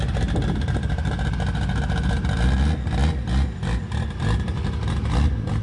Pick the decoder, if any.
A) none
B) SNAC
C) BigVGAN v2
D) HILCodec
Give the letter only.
A